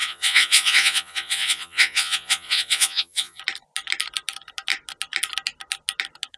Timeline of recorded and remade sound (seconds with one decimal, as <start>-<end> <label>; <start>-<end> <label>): 0.0-3.4 remade; 3.4-6.4 recorded